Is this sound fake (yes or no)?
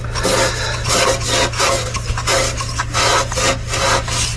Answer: no